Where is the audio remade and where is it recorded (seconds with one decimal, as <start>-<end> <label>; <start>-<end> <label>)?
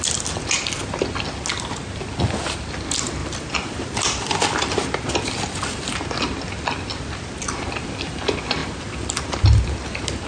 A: 0.0-3.2 recorded; 3.2-4.3 remade; 4.3-10.3 recorded